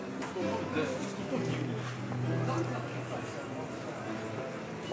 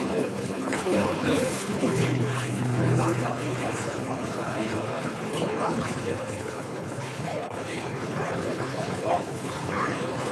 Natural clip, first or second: first